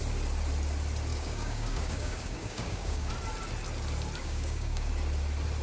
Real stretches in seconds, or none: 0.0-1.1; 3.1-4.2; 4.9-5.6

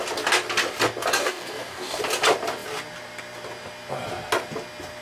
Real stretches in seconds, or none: 0.0-1.2; 2.0-5.0

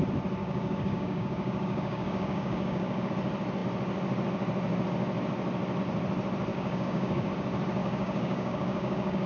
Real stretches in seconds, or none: 0.0-0.4; 3.1-6.5; 7.3-7.8

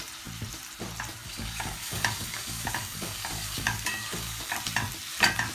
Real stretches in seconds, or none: 0.0-1.2; 4.5-5.5